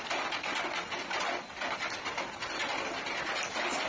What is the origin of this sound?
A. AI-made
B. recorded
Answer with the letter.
B